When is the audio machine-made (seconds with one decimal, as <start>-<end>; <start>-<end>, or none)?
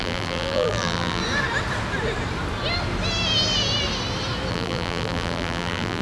0.0-1.2; 4.5-6.0